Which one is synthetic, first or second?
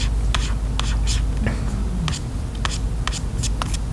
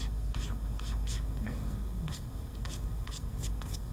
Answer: second